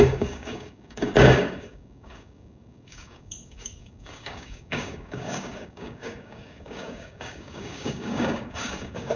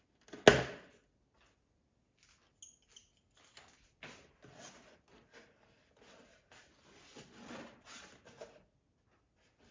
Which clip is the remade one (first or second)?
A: first